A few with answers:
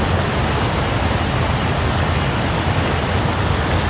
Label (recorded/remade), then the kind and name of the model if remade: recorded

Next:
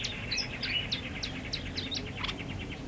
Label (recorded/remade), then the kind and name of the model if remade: recorded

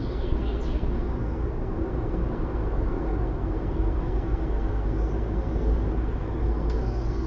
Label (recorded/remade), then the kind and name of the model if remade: remade, codec, SNAC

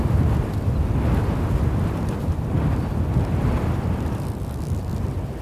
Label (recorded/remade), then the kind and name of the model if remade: recorded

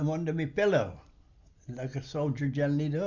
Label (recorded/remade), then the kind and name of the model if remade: recorded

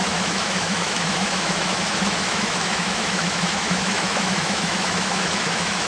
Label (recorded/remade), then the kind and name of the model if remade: remade, autoencoder, DAC-VAE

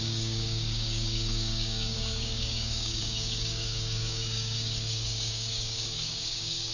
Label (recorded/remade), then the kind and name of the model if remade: remade, codec, DAC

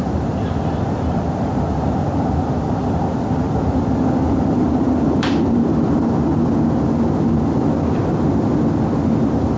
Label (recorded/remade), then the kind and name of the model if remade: remade, vocoder, BigVGAN v2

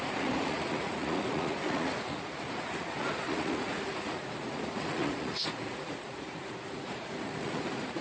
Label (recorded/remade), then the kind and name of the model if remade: remade, vocoder, Vocos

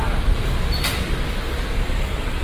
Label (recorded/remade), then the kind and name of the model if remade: recorded